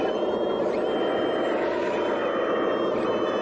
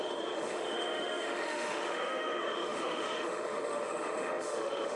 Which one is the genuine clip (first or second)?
first